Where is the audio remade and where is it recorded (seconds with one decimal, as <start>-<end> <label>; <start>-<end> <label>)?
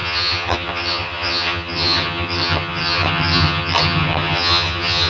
0.0-5.1 remade